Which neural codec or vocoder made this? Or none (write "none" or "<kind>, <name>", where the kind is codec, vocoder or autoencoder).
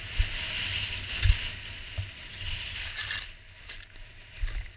none